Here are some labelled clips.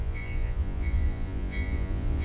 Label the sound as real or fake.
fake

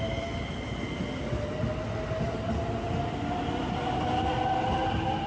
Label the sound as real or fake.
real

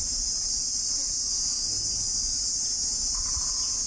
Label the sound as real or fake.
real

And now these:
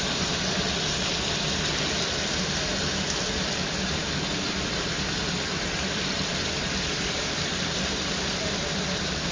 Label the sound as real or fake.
real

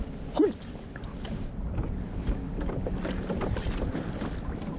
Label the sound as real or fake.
real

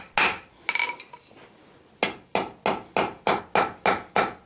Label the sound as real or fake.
real